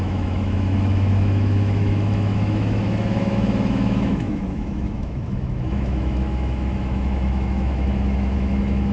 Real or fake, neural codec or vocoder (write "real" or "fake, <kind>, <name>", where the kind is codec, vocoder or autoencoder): fake, autoencoder, DAC-VAE